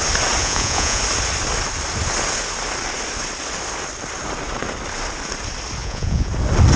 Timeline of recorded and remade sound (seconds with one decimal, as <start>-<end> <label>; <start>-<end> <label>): 0.0-0.4 recorded; 0.4-1.0 remade; 1.0-5.8 recorded; 5.8-6.3 remade; 6.3-6.8 recorded